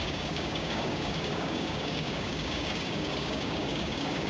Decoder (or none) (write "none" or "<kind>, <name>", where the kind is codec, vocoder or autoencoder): codec, DAC